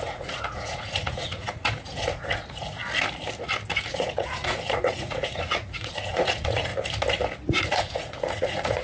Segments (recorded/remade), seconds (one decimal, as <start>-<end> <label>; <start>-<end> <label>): 0.0-2.8 remade; 2.8-3.9 recorded; 3.9-6.7 remade; 6.7-7.6 recorded; 7.6-8.8 remade